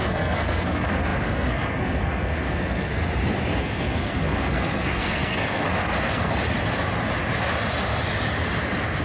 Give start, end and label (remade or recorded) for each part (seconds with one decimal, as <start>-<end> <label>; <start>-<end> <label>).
0.0-2.9 remade; 2.9-3.6 recorded; 3.6-6.3 remade; 6.3-9.0 recorded